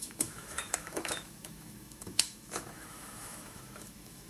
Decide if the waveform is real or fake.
fake